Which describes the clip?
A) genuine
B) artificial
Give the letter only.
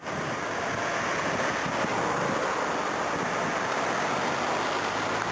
A